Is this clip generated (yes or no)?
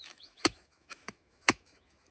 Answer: yes